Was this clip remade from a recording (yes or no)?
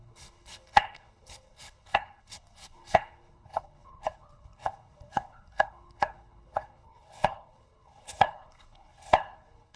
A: yes